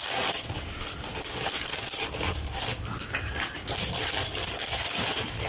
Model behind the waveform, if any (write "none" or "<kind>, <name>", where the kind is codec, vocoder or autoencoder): none